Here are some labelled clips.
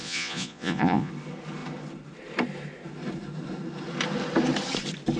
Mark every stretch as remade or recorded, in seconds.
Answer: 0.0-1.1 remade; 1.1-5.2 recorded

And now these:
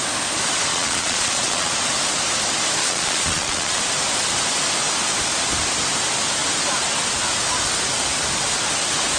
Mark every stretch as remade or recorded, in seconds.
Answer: 0.0-0.7 recorded; 0.7-1.7 remade; 1.7-2.8 recorded; 2.8-3.8 remade; 3.8-9.2 recorded

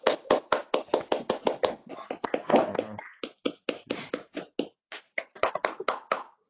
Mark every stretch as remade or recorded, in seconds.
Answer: 0.0-6.5 recorded

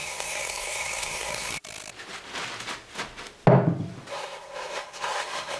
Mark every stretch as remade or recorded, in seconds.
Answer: 0.0-1.5 remade; 1.5-4.1 recorded; 4.1-5.6 remade